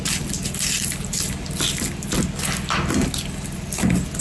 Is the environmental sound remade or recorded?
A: recorded